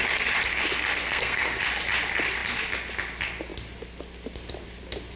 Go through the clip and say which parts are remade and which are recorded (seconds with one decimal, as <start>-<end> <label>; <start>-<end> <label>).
0.0-1.0 recorded; 1.0-1.6 remade; 1.6-5.2 recorded